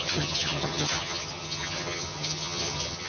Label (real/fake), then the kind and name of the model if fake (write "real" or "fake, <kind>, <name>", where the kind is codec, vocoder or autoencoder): fake, vocoder, HiFi-GAN